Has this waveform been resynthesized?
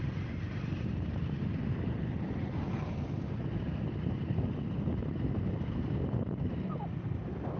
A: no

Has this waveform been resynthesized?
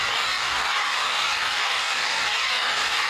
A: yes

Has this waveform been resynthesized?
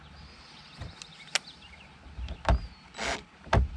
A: no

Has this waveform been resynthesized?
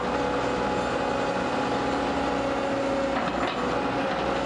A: no